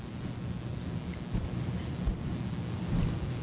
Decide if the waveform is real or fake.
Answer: real